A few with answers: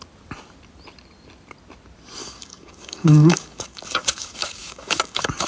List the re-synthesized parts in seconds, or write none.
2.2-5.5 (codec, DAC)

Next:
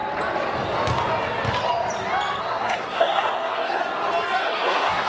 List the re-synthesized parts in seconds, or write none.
2.4-3.8 (codec, SNAC); 4.4-5.1

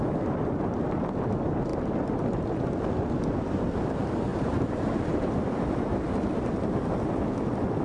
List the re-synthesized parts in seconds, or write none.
4.3-6.3 (vocoder, BigVGAN v2)

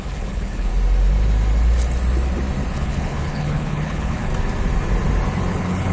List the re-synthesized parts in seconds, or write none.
0.0-0.7 (codec, HILCodec); 2.7-4.3; 5.5-5.9

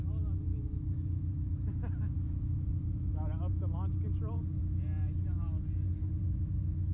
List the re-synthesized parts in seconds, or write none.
none